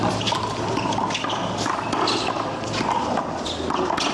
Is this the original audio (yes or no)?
yes